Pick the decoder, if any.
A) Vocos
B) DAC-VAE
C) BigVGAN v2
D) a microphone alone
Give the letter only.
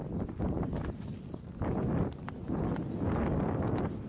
D